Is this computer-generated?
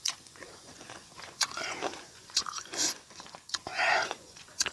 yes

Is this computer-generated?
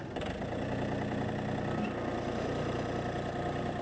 no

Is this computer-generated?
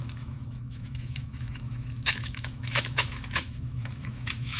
yes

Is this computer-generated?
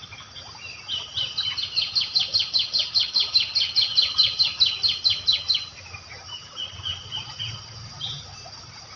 no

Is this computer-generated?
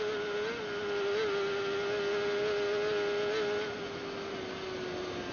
no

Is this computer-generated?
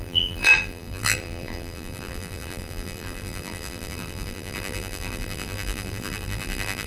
yes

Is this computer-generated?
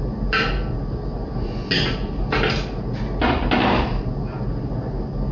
no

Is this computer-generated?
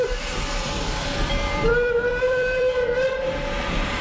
yes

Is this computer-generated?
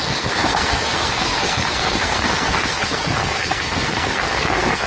yes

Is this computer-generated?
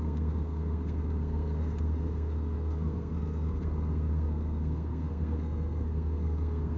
yes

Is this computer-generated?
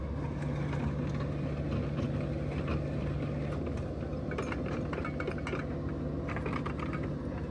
no